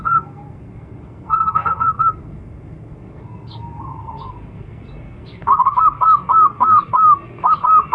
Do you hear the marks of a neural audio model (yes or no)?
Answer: yes